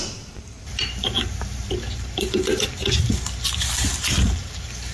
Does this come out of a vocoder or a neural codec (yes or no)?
yes